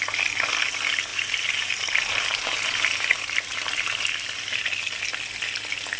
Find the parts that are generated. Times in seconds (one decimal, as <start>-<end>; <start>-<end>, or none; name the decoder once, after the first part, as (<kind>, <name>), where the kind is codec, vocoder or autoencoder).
1.1-4.0 (vocoder, BigVGAN v2)